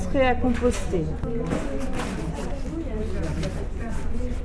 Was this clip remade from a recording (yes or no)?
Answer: no